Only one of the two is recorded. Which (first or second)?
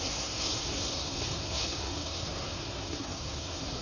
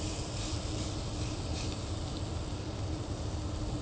second